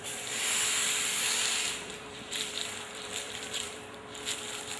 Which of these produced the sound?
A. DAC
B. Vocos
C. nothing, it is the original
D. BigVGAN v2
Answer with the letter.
D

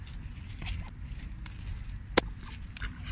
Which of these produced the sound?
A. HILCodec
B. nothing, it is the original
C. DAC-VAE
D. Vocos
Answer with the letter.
B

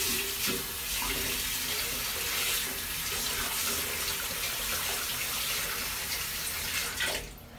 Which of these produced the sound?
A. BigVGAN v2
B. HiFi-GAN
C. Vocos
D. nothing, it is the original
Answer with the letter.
D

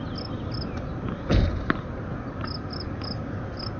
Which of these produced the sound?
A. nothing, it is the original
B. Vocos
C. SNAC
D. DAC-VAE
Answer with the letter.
A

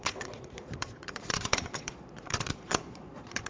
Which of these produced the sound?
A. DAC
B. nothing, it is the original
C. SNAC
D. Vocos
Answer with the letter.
D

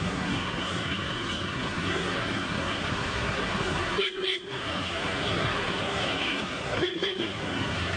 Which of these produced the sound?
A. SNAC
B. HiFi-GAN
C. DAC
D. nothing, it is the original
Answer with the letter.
A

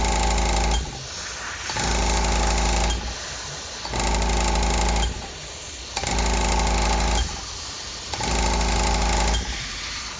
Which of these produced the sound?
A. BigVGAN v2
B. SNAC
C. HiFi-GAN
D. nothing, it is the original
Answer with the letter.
D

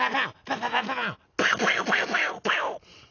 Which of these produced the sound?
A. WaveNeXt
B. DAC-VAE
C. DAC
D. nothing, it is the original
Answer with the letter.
D